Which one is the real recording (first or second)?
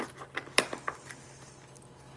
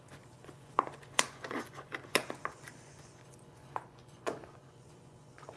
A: first